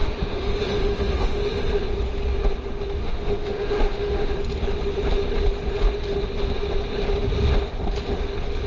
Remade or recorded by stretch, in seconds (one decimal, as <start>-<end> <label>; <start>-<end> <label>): 0.0-1.4 remade; 1.4-3.0 recorded; 3.0-4.3 remade; 4.3-8.7 recorded